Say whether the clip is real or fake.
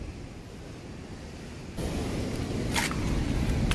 real